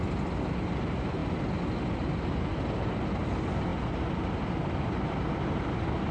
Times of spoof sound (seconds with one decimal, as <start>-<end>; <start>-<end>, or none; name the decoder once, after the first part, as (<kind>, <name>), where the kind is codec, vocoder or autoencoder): none